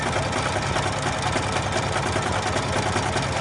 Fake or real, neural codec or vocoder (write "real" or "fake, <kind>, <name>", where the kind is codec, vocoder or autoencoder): real